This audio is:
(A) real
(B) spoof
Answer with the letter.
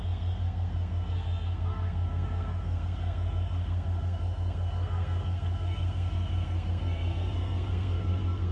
B